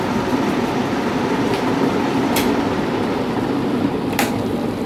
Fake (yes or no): no